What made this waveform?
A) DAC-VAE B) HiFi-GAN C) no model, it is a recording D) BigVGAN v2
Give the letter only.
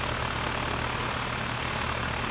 C